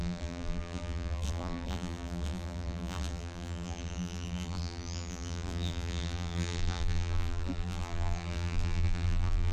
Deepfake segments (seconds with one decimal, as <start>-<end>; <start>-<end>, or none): 0.0-9.5